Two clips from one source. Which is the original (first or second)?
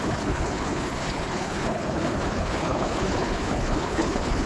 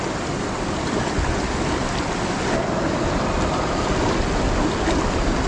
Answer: second